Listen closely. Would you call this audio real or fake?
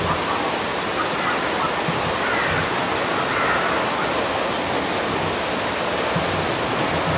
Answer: real